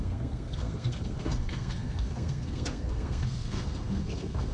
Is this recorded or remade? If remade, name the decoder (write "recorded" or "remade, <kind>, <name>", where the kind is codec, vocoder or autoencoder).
remade, codec, SNAC